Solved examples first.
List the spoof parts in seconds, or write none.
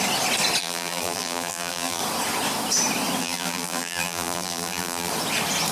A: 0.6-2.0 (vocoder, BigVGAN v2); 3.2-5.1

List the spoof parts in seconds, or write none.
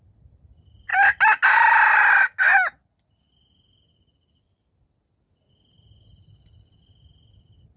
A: none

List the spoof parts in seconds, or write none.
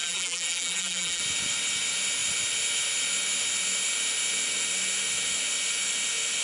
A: 0.0-1.2 (vocoder, BigVGAN v2)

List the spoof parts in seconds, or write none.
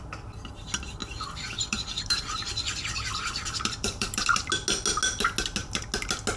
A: 1.0-4.5 (vocoder, BigVGAN v2)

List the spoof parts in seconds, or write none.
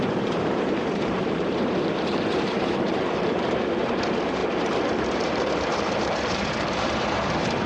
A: 0.0-4.4 (vocoder, BigVGAN v2); 5.0-7.7